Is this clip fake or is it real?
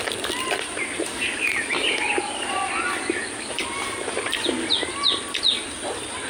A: real